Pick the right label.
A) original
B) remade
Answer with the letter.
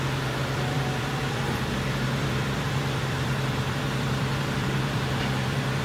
B